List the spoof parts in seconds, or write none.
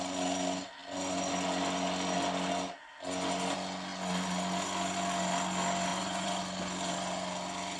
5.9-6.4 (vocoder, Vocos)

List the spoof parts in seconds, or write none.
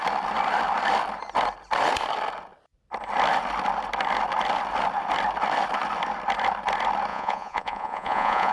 7.1-8.5 (vocoder, Vocos)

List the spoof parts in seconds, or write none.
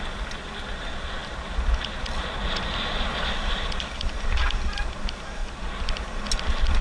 2.4-4.4 (vocoder, BigVGAN v2); 5.4-6.3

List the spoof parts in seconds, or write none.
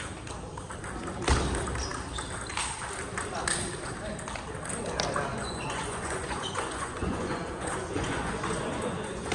5.3-9.3 (vocoder, Vocos)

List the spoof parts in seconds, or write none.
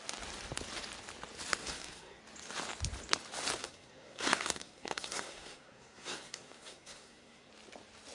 1.6-2.2 (codec, SNAC); 3.6-7.5